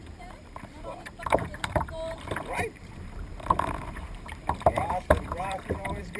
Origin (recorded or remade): remade